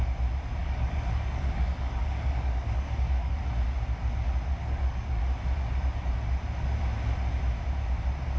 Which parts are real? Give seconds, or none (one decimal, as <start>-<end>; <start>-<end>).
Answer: 0.0-0.6; 3.4-4.6; 5.2-8.4